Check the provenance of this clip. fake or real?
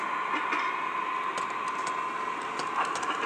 real